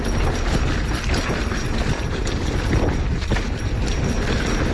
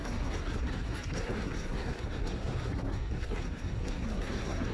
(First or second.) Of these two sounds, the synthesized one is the second